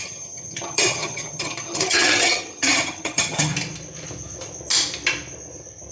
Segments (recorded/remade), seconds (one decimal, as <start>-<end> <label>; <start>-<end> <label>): 0.0-3.5 remade; 3.5-5.9 recorded